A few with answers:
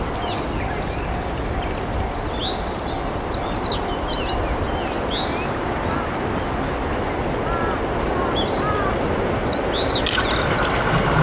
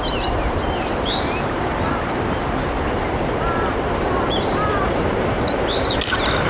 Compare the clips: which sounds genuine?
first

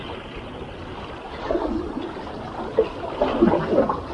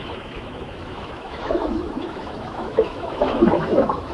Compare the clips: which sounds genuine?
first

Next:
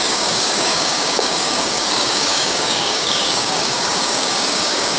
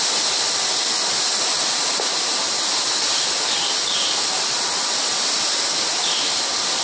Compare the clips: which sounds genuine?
second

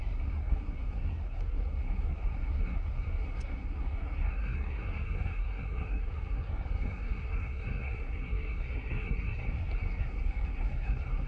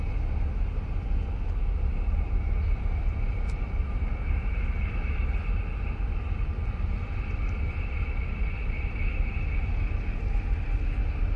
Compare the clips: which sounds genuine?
second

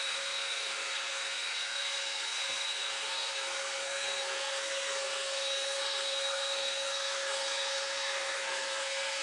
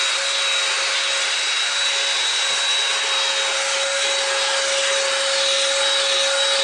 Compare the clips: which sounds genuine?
second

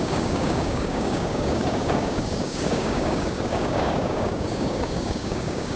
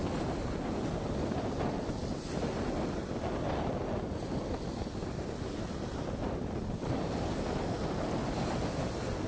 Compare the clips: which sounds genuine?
second